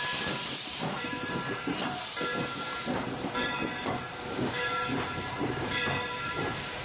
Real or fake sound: fake